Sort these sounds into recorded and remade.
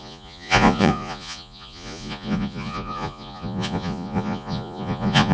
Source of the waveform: remade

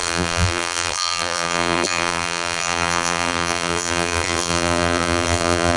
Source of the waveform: remade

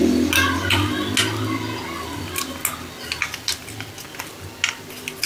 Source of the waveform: recorded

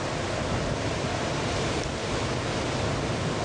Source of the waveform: recorded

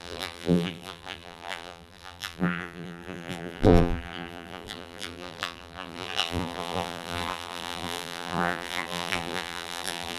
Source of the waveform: remade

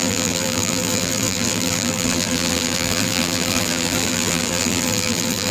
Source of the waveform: remade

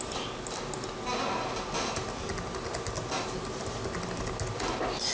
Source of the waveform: recorded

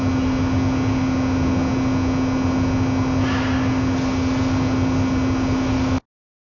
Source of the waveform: recorded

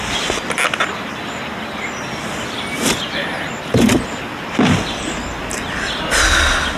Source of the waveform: recorded